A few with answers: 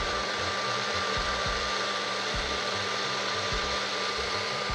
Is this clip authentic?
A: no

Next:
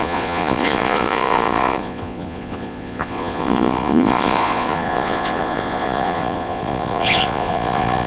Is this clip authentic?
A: no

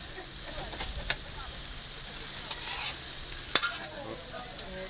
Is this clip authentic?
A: yes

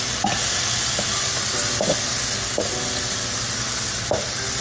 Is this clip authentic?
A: yes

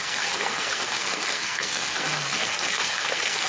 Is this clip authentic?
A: no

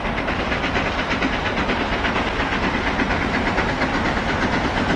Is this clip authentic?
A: yes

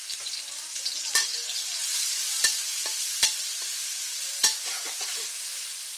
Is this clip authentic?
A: yes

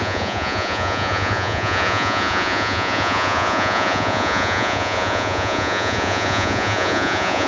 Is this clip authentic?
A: no